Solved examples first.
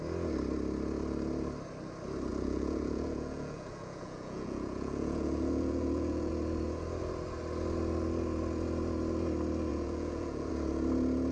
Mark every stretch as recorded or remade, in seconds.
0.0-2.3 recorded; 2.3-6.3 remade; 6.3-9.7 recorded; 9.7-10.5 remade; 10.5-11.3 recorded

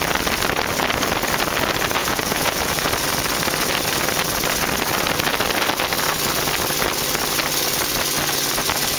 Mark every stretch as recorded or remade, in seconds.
0.0-2.0 recorded; 2.0-2.9 remade; 2.9-9.0 recorded

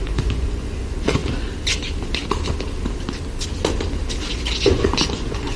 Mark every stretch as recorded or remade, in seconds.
0.0-1.2 remade; 1.2-4.6 recorded; 4.6-5.6 remade

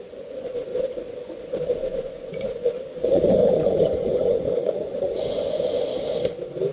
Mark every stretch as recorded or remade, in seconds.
0.0-5.9 remade; 5.9-6.7 recorded